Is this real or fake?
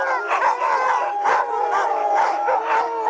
real